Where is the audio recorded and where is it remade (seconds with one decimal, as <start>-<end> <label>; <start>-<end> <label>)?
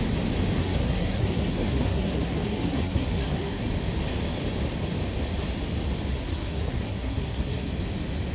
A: 0.0-0.6 recorded; 0.6-3.7 remade; 3.7-6.1 recorded; 6.1-7.7 remade; 7.7-8.3 recorded